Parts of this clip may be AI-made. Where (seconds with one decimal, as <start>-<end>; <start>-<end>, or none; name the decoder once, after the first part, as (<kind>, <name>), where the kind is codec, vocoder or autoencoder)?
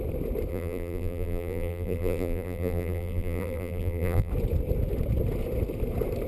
0.5-4.3 (vocoder, BigVGAN v2)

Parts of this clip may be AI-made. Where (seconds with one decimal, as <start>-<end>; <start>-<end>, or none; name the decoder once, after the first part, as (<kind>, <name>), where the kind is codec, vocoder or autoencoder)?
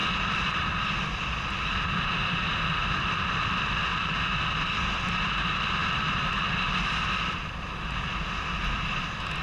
0.0-1.5 (vocoder, BigVGAN v2); 2.8-3.9; 5.8-6.4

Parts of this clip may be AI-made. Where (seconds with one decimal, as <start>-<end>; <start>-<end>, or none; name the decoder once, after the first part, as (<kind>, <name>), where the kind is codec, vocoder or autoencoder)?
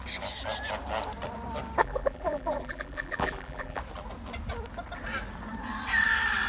1.8-3.8 (vocoder, BigVGAN v2)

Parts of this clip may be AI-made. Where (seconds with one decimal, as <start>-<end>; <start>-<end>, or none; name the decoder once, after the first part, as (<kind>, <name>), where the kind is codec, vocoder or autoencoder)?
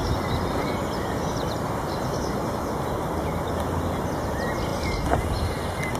0.0-3.6 (vocoder, BigVGAN v2); 4.7-6.0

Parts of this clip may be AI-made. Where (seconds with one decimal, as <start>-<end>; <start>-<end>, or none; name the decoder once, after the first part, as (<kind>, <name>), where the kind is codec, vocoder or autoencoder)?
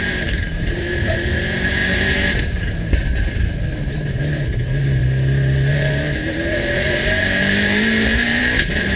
0.0-5.0 (vocoder, BigVGAN v2); 5.7-9.0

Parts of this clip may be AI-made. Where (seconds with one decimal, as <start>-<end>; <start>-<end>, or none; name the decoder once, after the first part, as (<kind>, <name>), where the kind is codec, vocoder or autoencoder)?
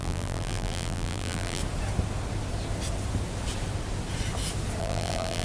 0.0-1.6 (vocoder, BigVGAN v2); 4.8-5.4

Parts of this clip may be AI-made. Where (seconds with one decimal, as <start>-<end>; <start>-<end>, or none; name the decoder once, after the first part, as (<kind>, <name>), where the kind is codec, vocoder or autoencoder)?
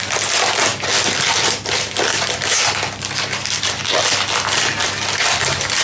none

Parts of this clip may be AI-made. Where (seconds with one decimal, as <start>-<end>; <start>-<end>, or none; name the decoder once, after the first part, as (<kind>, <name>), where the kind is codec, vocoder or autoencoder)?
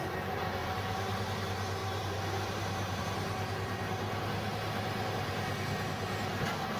0.6-1.2 (vocoder, BigVGAN v2); 1.8-3.0; 4.5-5.3